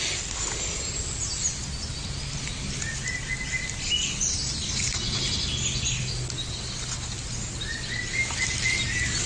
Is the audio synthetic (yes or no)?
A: no